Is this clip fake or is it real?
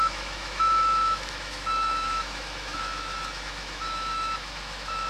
fake